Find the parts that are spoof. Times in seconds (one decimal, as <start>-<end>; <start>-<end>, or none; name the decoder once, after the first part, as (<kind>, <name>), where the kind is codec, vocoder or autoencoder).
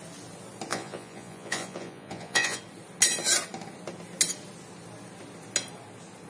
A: 0.7-2.6 (vocoder, Vocos)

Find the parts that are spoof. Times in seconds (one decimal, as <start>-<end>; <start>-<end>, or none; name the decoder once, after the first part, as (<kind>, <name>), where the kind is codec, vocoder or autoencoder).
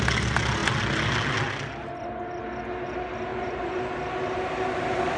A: 3.3-3.8 (vocoder, Vocos)